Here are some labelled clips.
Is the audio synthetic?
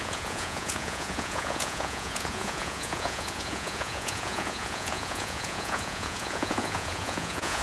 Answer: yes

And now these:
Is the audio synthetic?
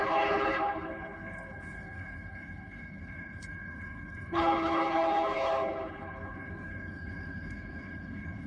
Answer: yes